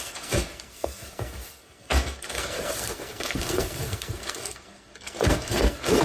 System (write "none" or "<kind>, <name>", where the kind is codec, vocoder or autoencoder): codec, SNAC